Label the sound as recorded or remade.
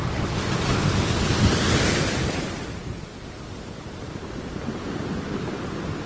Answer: recorded